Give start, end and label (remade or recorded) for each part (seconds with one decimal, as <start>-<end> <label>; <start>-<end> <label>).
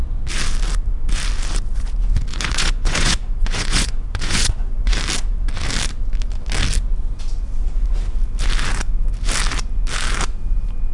0.0-2.3 recorded; 2.3-4.9 remade; 4.9-10.9 recorded